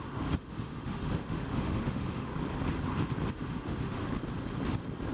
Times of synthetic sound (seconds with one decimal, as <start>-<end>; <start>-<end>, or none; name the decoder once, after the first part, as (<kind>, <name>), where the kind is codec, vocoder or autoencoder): 0.0-2.3 (autoencoder, DAC-VAE); 3.3-4.0